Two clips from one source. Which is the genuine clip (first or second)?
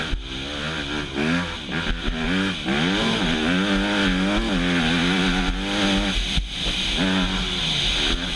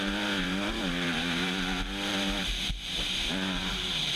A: first